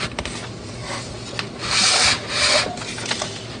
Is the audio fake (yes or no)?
no